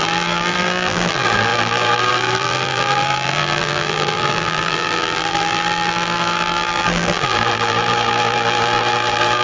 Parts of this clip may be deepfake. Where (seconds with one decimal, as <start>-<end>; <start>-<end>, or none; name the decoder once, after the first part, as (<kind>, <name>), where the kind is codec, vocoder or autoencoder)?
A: 0.0-9.4 (vocoder, BigVGAN v2)